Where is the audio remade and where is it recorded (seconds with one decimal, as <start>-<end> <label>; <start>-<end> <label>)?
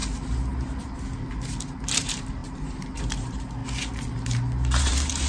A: 0.0-1.8 recorded; 1.8-3.6 remade; 3.6-4.8 recorded; 4.8-5.3 remade